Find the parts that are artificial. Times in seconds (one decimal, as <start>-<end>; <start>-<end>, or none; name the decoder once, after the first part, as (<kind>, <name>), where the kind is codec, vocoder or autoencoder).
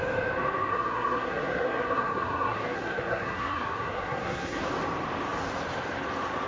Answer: 0.7-4.6 (codec, SNAC)